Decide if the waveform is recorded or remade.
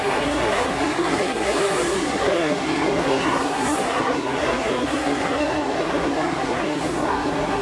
remade